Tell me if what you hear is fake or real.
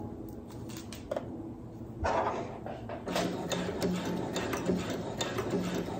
real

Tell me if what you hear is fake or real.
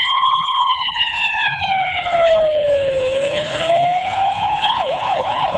fake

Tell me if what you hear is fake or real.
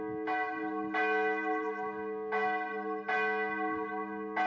real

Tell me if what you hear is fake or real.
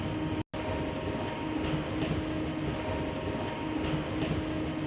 real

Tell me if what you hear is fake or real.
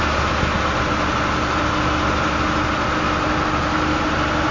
real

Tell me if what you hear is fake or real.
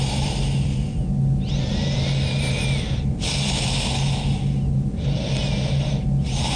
real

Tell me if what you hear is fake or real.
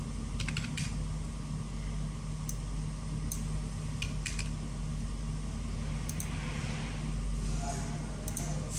real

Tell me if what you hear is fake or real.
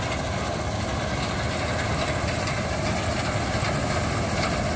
real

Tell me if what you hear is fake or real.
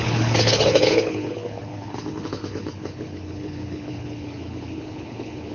fake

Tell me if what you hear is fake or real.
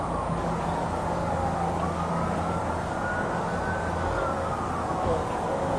fake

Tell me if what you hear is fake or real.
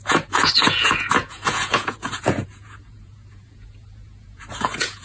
fake